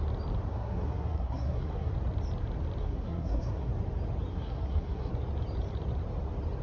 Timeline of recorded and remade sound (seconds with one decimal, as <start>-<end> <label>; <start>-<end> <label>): 0.0-0.5 recorded; 0.5-1.9 remade; 1.9-2.8 recorded; 2.8-3.7 remade; 3.7-4.3 recorded; 4.3-5.1 remade; 5.1-6.6 recorded